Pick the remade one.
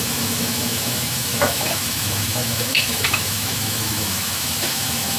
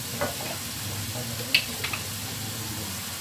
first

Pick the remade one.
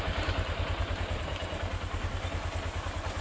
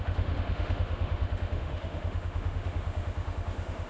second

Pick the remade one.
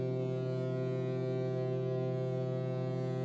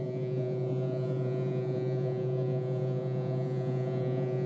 second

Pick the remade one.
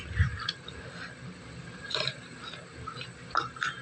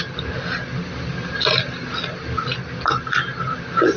first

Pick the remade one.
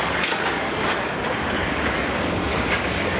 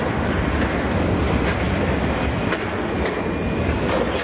first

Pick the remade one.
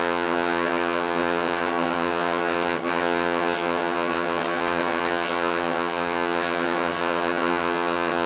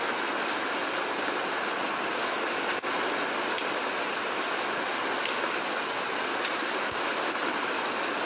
first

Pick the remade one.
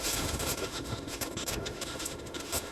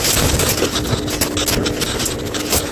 first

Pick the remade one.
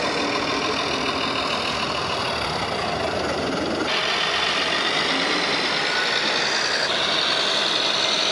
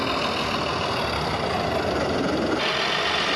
first